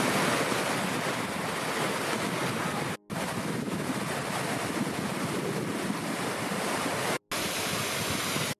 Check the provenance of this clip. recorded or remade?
recorded